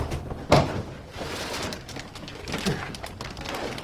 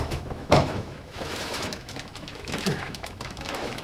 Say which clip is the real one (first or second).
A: first